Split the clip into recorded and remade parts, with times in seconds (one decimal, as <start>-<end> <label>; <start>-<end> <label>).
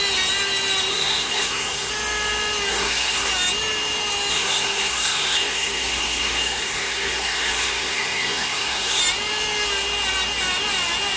0.0-0.9 recorded; 0.9-1.9 remade; 1.9-2.7 recorded; 2.7-3.3 remade; 3.3-4.3 recorded; 4.3-9.0 remade; 9.0-11.2 recorded